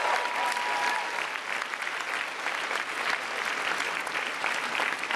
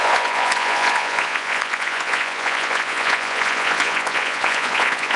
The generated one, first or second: second